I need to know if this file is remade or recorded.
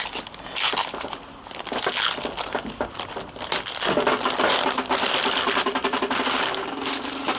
recorded